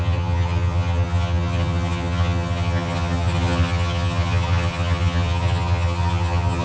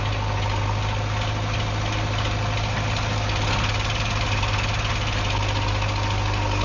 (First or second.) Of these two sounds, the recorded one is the second